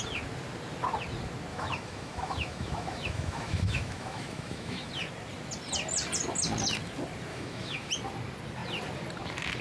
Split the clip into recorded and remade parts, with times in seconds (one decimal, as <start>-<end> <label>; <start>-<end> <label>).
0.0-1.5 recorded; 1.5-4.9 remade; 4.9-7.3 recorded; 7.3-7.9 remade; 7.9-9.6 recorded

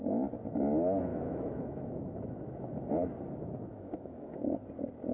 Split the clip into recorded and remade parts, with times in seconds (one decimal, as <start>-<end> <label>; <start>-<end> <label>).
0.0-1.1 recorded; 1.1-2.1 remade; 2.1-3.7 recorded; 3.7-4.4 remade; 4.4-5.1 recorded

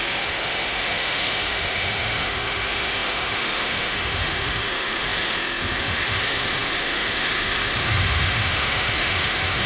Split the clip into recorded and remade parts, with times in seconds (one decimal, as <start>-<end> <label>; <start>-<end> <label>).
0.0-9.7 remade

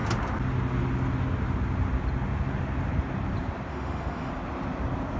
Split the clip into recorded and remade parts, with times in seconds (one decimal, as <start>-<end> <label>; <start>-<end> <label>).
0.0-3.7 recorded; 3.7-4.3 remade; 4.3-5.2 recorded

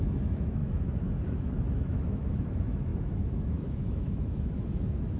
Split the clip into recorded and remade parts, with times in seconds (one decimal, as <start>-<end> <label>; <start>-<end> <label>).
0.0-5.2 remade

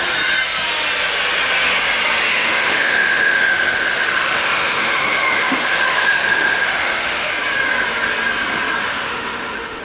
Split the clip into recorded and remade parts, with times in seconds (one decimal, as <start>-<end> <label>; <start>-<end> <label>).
0.0-2.3 recorded; 2.3-7.3 remade; 7.3-8.8 recorded; 8.8-9.8 remade

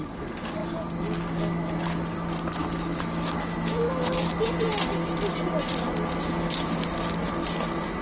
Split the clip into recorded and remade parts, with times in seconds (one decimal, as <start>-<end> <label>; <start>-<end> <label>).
0.0-2.6 recorded; 2.6-4.3 remade; 4.3-8.0 recorded

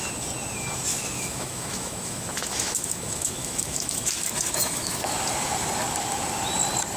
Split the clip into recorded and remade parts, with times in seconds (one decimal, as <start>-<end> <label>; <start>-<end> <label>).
0.0-0.9 recorded; 0.9-5.1 remade; 5.1-7.0 recorded